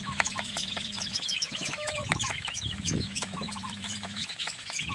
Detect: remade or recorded remade